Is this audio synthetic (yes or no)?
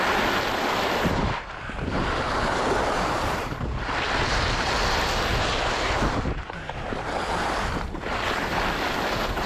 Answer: no